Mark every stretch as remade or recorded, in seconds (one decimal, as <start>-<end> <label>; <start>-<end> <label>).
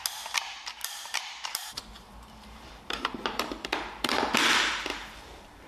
0.0-0.8 recorded; 0.8-4.2 remade; 4.2-4.9 recorded; 4.9-5.7 remade